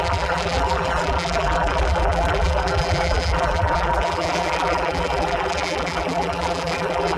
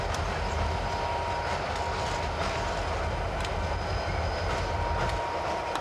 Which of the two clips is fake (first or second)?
first